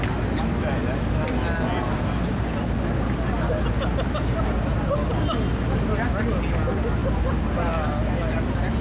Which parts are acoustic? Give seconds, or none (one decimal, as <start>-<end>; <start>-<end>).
0.0-8.8